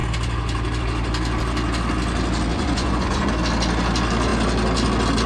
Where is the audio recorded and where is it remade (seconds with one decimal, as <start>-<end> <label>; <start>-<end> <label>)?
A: 0.0-2.5 recorded; 2.5-3.3 remade; 3.3-5.3 recorded